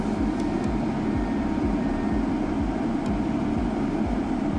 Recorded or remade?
recorded